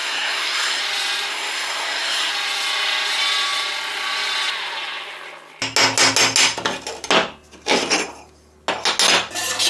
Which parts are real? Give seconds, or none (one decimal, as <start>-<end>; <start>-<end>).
0.8-1.3; 2.3-9.7

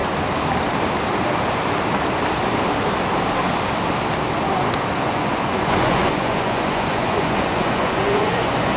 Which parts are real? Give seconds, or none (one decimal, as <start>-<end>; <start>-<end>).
0.0-5.0

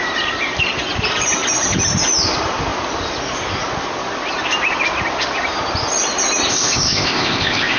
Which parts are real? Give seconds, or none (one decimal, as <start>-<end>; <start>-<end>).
0.0-6.5

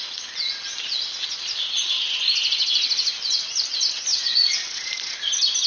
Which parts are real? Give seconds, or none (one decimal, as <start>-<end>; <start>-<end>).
0.0-4.1; 5.3-5.7

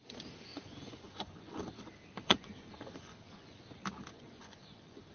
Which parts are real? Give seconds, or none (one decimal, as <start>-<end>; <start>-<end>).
0.0-0.5; 1.6-2.2; 3.6-4.1